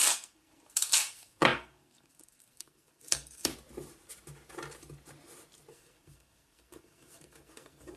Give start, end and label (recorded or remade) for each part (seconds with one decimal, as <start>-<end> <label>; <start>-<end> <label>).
0.0-3.5 remade; 3.5-5.7 recorded; 5.7-8.0 remade